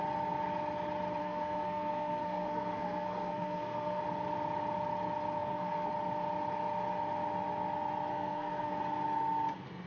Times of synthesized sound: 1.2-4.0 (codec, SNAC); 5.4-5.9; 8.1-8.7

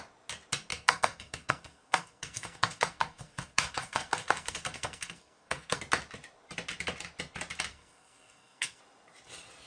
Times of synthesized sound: 0.7-5.8 (codec, SNAC); 7.7-8.8

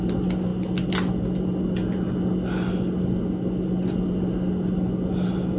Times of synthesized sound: none